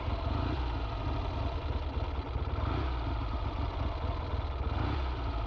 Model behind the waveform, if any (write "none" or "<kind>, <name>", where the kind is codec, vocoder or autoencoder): none